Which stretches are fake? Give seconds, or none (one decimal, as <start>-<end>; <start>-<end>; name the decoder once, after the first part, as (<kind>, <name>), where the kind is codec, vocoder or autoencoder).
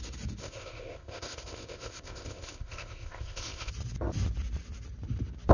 0.4-3.7 (codec, ZipCodec)